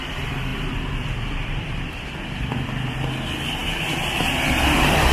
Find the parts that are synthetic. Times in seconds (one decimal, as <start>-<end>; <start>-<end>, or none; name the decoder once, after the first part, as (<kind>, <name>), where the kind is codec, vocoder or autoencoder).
0.5-2.0 (vocoder, BigVGAN v2)